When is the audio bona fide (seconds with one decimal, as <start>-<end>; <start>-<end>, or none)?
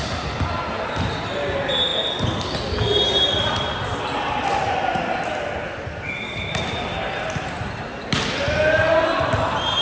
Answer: 0.0-9.8